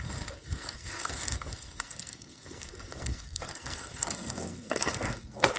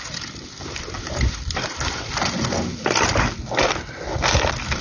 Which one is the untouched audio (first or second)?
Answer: second